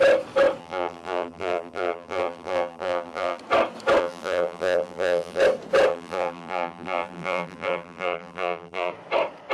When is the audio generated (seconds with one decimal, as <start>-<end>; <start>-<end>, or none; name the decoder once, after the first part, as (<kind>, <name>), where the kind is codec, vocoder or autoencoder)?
0.6-3.4 (vocoder, BigVGAN v2); 4.0-5.4; 5.9-8.9